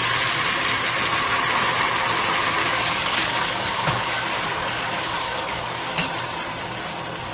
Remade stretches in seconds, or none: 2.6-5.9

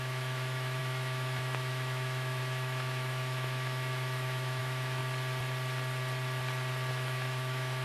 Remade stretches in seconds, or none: 0.0-5.0; 6.9-7.8

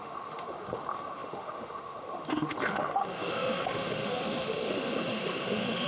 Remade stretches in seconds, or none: 0.0-5.9